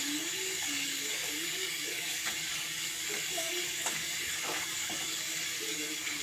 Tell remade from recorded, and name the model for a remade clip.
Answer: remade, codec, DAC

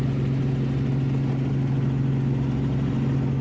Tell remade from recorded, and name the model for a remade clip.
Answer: recorded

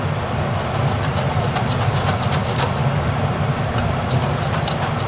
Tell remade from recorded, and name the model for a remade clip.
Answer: recorded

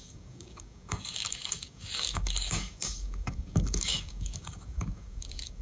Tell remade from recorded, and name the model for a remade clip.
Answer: remade, codec, DAC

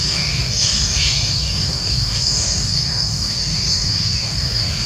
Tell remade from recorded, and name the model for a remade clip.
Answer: remade, codec, DAC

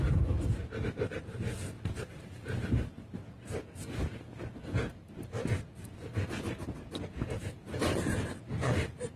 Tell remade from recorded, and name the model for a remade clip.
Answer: recorded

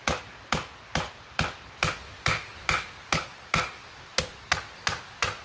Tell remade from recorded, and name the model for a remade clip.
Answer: recorded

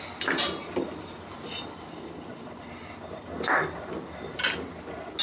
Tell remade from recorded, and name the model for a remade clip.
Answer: recorded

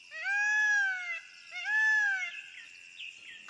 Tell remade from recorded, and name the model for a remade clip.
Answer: recorded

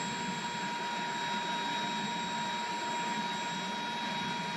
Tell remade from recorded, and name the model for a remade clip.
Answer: recorded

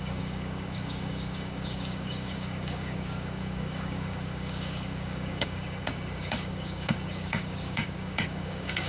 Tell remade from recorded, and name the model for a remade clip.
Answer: remade, codec, DAC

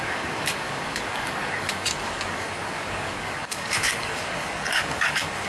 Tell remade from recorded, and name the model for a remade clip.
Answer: remade, codec, DAC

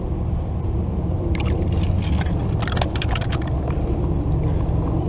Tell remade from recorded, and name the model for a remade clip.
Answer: recorded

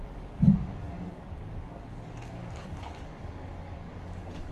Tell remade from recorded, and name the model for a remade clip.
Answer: remade, codec, DAC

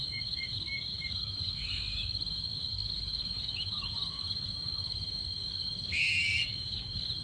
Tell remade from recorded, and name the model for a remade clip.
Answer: remade, codec, DAC